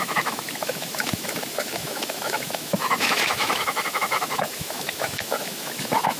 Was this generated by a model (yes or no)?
yes